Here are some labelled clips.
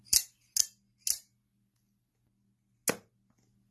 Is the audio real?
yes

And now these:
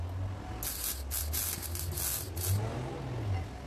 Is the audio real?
yes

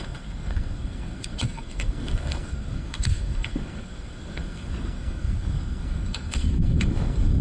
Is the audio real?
no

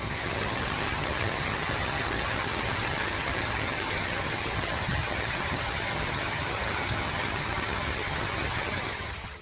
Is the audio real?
no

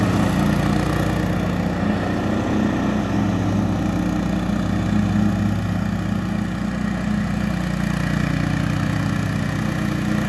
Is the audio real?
yes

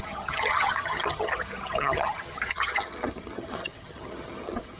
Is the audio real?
no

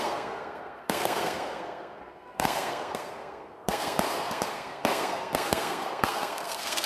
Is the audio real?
no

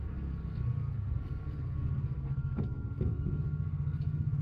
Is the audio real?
no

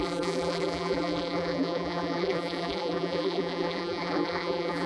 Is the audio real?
no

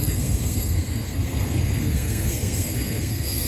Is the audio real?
no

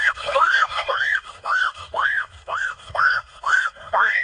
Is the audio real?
no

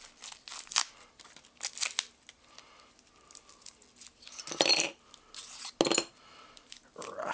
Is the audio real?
yes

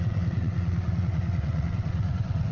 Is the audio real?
no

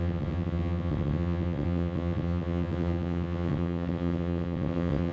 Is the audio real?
no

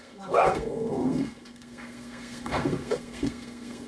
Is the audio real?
no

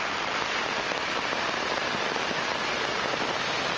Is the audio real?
yes